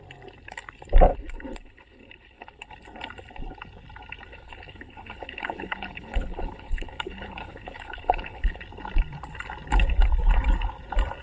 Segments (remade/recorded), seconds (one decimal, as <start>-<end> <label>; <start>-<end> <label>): 0.0-1.1 recorded; 1.1-2.7 remade; 2.7-4.3 recorded; 4.3-8.6 remade; 8.6-11.2 recorded